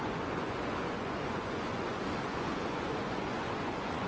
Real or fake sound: fake